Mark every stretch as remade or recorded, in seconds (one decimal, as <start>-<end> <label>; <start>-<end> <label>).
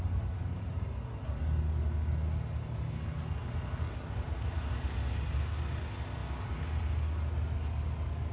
0.0-8.3 recorded